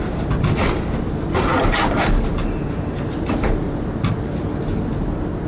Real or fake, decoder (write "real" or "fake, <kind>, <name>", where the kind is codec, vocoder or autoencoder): real